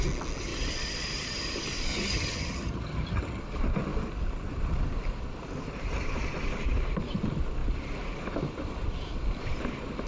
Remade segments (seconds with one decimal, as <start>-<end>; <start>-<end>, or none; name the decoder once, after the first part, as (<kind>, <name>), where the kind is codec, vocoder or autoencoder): 1.9-3.4 (vocoder, HiFi-GAN)